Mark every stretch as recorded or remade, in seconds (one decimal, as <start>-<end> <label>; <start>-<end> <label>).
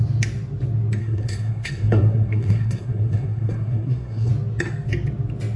0.0-1.0 recorded; 1.0-4.3 remade; 4.3-5.6 recorded